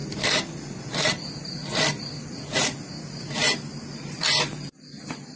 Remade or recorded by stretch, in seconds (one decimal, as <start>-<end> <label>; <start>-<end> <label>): 0.0-3.2 remade; 3.2-5.4 recorded